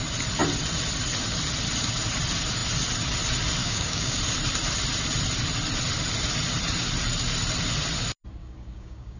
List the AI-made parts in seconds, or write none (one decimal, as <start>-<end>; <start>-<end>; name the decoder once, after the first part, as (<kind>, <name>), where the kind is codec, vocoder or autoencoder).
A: 3.6-4.2 (codec, DAC); 8.4-9.2